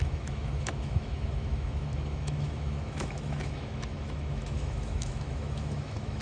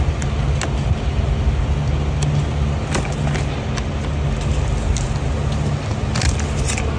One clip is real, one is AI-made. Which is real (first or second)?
second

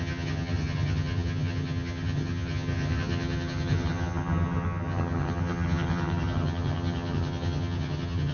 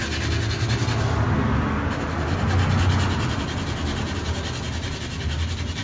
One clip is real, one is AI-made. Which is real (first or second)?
second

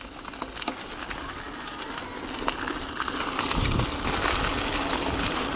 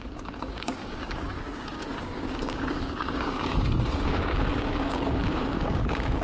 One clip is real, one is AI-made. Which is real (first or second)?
first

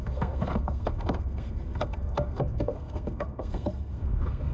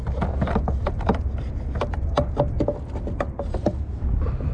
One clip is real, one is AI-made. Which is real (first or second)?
second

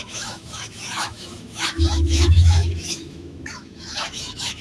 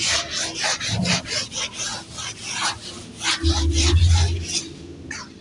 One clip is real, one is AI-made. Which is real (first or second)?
second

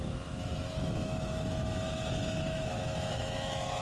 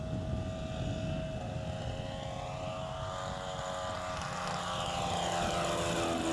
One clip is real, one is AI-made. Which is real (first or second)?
second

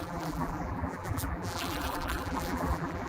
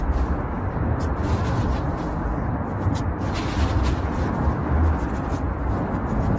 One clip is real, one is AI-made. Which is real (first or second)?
second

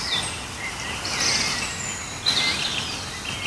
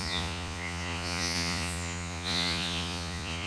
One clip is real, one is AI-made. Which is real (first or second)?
first